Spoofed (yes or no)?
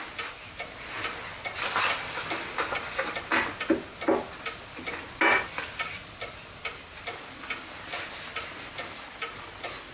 no